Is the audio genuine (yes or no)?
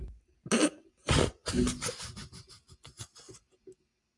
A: yes